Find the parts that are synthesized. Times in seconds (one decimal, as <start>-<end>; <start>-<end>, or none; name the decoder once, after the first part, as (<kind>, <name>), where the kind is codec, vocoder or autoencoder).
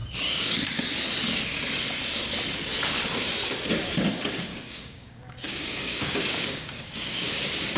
4.5-7.3 (codec, DAC)